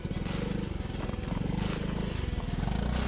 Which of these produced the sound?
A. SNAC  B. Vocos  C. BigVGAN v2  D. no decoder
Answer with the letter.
D